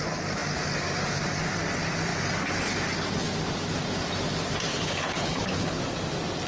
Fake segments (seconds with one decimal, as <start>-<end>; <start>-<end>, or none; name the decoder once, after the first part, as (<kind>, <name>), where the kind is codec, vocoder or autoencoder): 4.7-5.8 (codec, HILCodec)